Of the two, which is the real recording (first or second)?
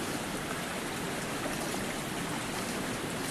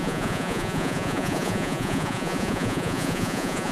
first